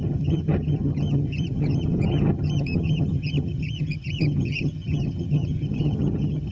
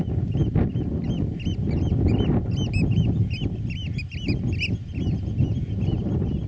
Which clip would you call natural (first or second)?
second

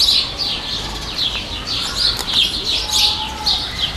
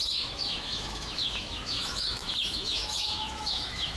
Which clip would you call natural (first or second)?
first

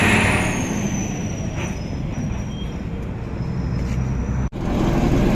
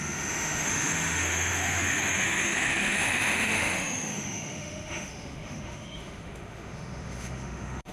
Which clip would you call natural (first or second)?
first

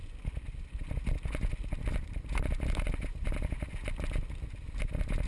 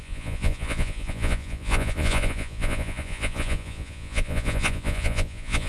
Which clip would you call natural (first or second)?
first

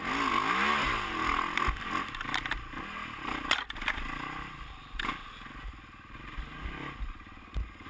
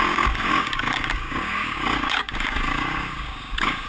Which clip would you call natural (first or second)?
first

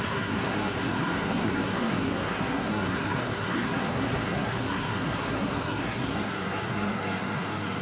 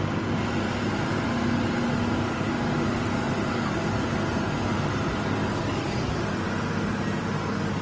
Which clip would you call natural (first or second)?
second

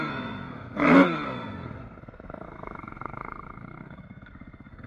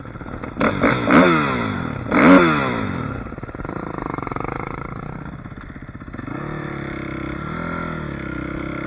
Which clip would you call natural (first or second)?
second